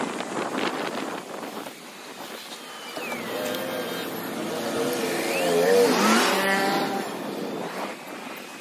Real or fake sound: real